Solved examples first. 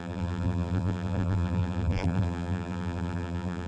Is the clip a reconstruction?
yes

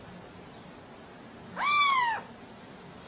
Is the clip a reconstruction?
no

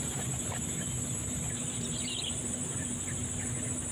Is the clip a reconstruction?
yes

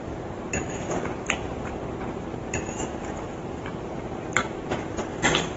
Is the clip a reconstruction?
yes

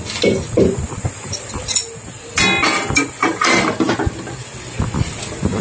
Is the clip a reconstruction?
no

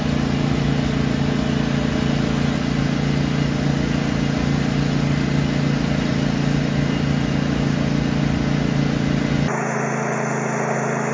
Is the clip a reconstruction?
no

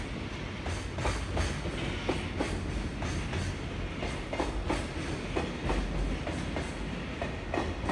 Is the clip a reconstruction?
no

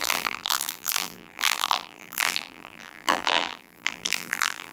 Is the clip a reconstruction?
yes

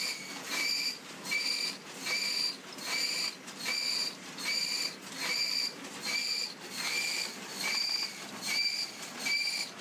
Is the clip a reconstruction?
yes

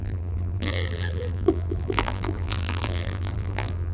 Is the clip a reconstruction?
yes